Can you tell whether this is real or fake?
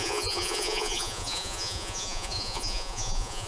fake